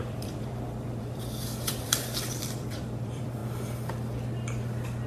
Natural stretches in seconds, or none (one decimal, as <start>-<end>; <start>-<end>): 3.4-5.1